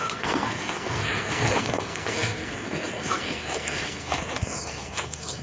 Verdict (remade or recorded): remade